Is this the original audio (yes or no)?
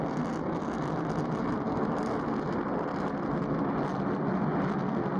yes